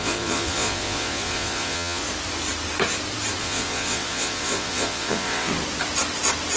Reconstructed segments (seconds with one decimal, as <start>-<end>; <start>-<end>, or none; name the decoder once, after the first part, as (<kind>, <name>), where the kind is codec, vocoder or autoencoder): 0.0-2.0 (vocoder, Vocos); 3.4-5.5